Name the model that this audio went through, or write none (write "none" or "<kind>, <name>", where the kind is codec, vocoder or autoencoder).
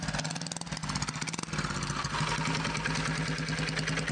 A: none